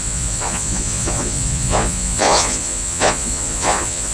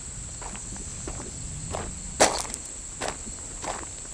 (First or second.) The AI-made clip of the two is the first